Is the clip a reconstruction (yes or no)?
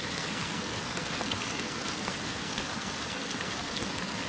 yes